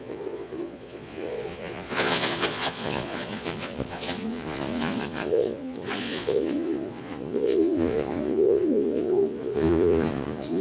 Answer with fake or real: fake